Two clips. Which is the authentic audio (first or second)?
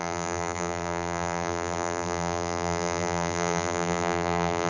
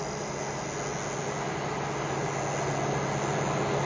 second